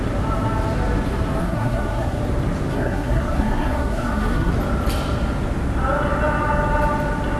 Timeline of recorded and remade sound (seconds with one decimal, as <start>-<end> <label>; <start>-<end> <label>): 0.0-1.4 recorded; 1.4-2.2 remade; 2.2-2.7 recorded; 2.7-4.5 remade; 4.5-7.4 recorded